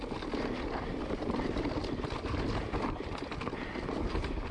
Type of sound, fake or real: fake